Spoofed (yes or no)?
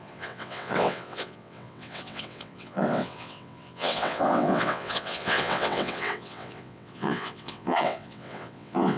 yes